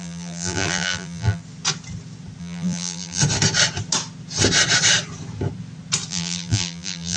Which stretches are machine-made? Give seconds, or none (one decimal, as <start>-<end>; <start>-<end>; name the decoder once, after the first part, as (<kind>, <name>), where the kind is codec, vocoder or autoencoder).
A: 0.0-1.4 (vocoder, BigVGAN v2); 2.4-3.2; 6.1-7.2